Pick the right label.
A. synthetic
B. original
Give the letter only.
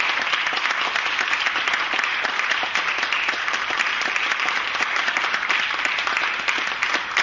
B